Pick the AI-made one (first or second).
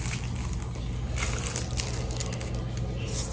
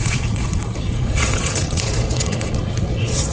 second